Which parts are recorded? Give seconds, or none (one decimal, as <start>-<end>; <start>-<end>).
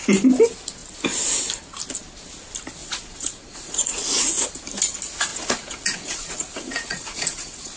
0.0-2.8; 4.3-5.3